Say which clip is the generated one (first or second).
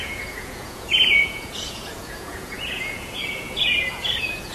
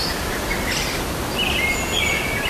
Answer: first